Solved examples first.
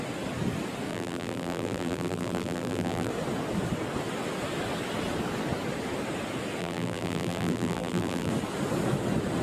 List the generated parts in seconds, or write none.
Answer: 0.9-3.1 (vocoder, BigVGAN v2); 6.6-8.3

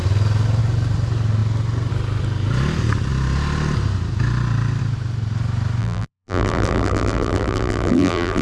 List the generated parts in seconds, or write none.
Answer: 5.8-8.4 (vocoder, BigVGAN v2)

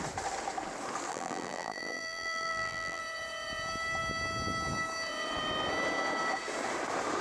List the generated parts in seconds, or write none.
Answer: 1.1-3.0 (vocoder, BigVGAN v2)